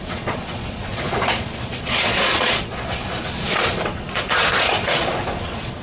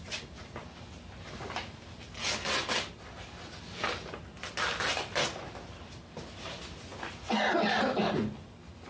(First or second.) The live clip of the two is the second